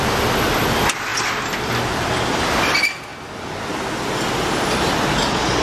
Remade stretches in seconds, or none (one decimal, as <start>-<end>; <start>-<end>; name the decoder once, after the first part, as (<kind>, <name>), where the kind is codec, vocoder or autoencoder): none